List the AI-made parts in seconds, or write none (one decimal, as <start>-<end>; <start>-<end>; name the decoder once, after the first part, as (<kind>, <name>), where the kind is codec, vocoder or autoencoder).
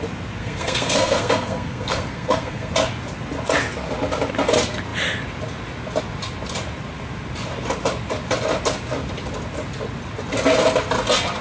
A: 0.4-2.7 (codec, SNAC)